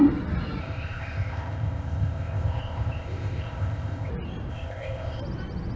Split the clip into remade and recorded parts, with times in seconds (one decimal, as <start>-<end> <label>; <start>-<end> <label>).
0.0-0.6 recorded; 0.6-4.1 remade; 4.1-4.5 recorded; 4.5-5.2 remade; 5.2-5.8 recorded